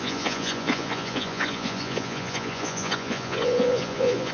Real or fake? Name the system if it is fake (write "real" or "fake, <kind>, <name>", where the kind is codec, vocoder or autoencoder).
fake, vocoder, Vocos